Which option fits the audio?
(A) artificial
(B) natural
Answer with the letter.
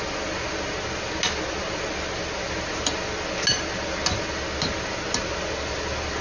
B